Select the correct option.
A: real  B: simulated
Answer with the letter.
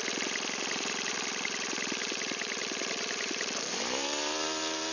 B